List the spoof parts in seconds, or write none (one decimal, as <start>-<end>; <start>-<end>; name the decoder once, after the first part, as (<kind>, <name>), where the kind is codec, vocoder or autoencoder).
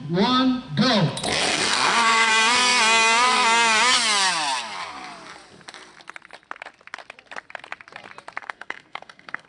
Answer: 1.4-2.3 (codec, SNAC); 8.4-9.5